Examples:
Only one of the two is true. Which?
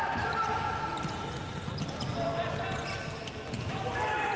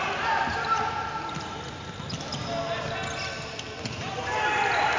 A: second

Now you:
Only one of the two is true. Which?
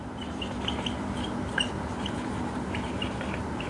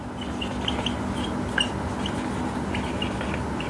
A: second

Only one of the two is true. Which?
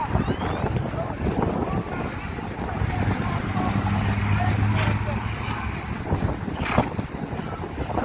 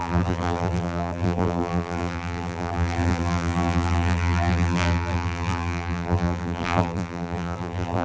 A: first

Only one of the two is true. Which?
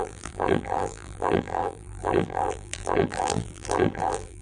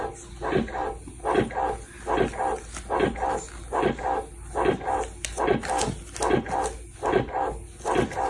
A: second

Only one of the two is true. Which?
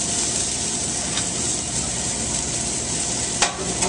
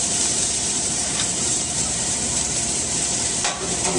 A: first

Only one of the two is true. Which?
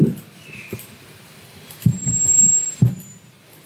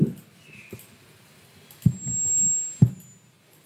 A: second